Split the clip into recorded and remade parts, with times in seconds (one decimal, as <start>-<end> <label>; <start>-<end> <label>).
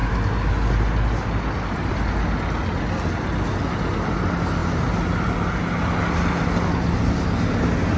0.0-8.0 recorded